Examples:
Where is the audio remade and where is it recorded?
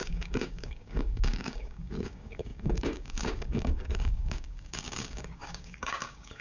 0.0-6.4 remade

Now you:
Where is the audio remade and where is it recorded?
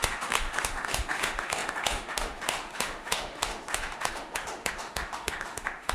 0.0-5.9 remade